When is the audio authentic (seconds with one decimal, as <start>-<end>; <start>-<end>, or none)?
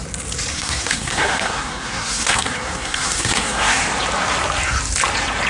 0.0-0.5; 3.8-5.5